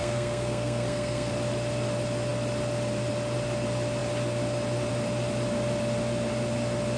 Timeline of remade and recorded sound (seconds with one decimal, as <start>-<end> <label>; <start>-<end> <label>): 0.0-1.3 remade; 1.3-7.0 recorded